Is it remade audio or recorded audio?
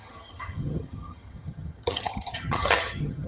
remade